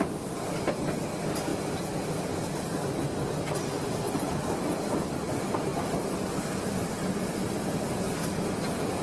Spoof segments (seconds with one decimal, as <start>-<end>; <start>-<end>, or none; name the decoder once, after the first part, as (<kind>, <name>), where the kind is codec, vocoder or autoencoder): none